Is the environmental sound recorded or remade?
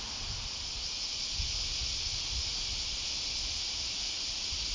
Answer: recorded